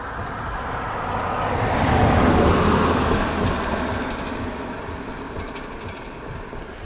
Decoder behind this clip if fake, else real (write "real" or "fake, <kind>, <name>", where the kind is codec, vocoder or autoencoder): real